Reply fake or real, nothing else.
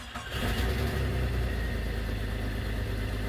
real